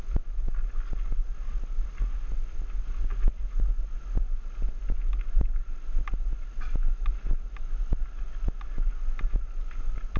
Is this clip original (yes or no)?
yes